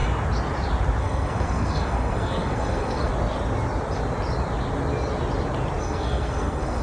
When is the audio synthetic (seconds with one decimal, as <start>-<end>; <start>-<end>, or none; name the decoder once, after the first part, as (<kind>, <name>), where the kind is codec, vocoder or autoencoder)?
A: 1.0-3.1 (codec, SNAC); 5.8-6.8